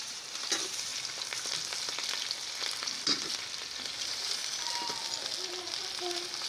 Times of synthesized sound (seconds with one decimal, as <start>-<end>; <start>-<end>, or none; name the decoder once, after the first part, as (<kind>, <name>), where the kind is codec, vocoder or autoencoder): 0.0-0.9 (vocoder, BigVGAN v2); 2.8-3.3; 4.0-4.4; 6.0-6.5